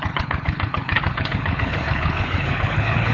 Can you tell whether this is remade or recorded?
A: remade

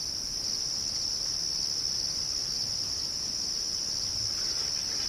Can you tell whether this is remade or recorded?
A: recorded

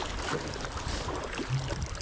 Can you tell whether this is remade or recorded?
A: recorded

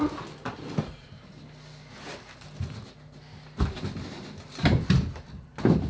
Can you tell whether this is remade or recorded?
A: recorded